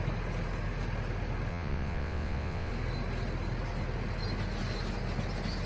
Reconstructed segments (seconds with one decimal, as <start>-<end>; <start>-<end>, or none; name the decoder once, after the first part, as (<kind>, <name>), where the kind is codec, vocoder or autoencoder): 1.5-2.7 (vocoder, WaveNeXt)